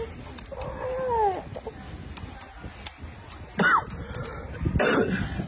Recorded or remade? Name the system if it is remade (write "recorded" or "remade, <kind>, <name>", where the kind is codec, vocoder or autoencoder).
recorded